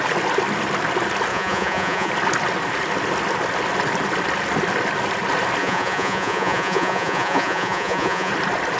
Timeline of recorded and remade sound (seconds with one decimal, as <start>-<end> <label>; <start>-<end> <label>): 0.0-1.3 recorded; 1.3-2.1 remade; 2.1-5.6 recorded; 5.6-8.3 remade; 8.3-8.8 recorded